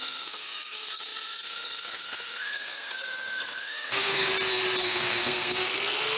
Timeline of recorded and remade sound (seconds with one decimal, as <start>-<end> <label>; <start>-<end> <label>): 0.0-4.3 remade; 4.3-4.8 recorded; 4.8-6.2 remade